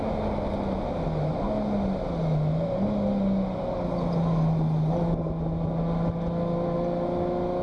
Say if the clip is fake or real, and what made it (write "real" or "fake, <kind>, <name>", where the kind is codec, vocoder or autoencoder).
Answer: real